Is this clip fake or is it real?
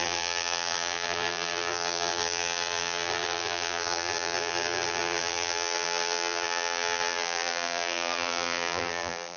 fake